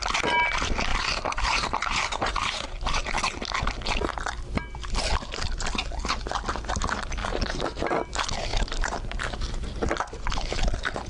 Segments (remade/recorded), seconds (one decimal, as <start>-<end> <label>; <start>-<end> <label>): 0.0-0.9 recorded; 0.9-3.2 remade; 3.2-7.2 recorded; 7.2-8.1 remade; 8.1-8.5 recorded; 8.5-9.2 remade; 9.2-11.1 recorded